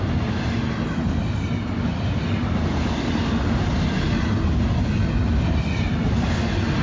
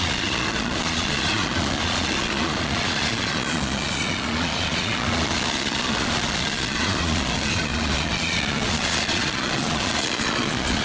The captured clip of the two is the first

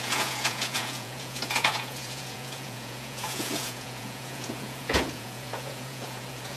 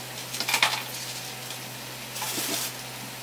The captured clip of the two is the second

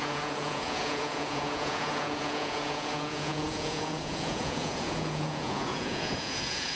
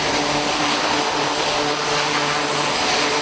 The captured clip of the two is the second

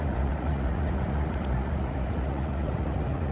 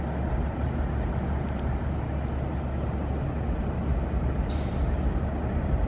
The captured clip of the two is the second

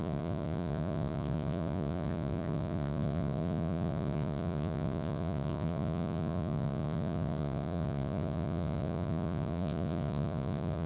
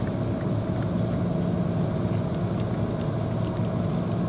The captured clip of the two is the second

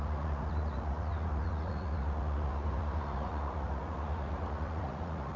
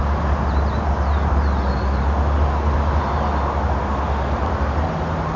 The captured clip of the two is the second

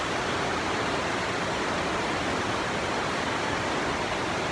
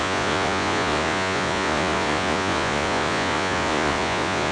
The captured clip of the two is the first